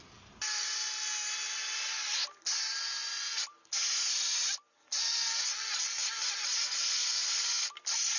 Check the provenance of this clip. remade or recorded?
recorded